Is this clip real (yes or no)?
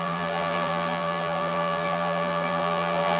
no